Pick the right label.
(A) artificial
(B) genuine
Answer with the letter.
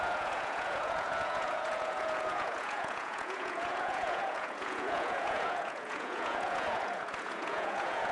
A